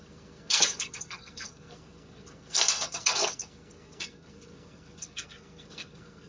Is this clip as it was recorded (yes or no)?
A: no